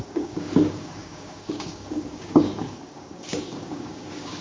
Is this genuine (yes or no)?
no